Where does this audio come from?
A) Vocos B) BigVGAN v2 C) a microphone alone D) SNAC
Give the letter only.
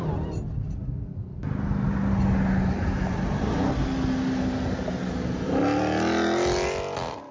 C